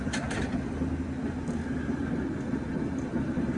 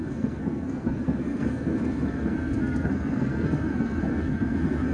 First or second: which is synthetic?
second